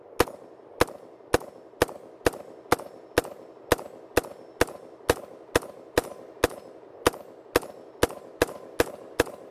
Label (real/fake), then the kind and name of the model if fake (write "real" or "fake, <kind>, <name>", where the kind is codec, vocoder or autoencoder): real